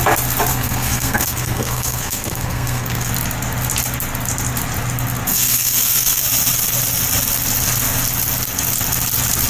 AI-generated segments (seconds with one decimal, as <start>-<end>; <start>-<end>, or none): 0.5-3.1; 5.3-6.2